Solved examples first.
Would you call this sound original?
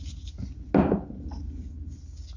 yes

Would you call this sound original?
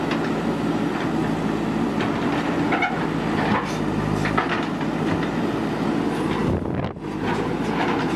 yes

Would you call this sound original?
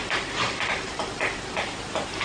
no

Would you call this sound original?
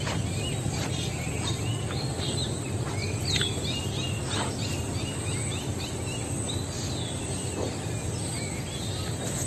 yes